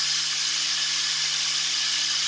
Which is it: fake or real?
real